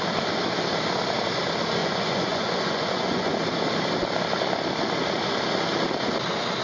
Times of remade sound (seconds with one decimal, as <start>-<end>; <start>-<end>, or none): 1.8-3.3